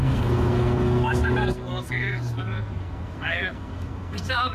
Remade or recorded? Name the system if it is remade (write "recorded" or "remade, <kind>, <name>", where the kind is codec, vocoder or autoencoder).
remade, codec, SNAC